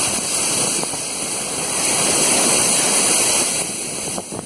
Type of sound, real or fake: fake